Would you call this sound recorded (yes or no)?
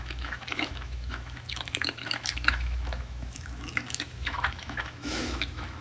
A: no